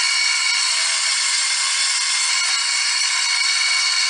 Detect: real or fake real